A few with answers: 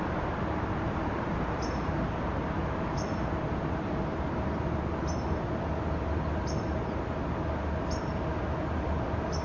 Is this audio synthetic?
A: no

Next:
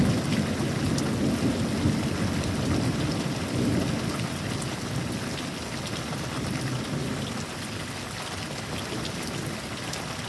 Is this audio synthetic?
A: no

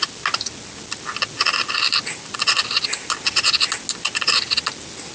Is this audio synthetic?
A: no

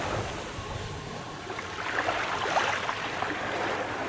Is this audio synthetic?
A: no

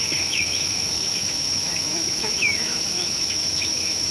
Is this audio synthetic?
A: yes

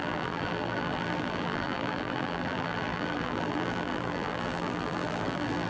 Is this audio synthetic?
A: yes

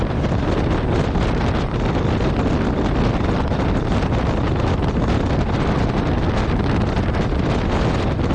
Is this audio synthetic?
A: no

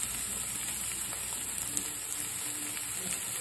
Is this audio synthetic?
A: no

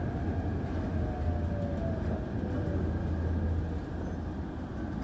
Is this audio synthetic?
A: no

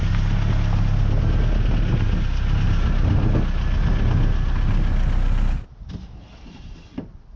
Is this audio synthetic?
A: no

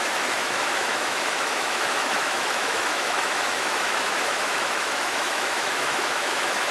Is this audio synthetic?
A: yes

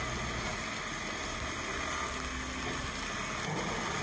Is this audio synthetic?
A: no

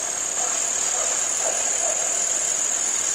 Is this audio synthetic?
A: no